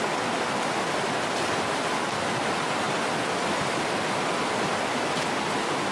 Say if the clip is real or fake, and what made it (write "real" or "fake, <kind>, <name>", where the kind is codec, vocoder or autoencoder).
real